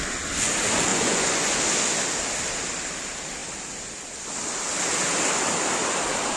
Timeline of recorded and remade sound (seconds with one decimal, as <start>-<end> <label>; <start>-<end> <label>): 0.0-0.9 recorded; 0.9-1.6 remade; 1.6-6.4 recorded